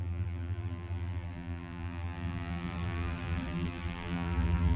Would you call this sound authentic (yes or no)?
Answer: no